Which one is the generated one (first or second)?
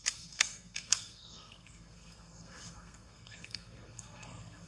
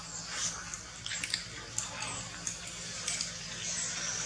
first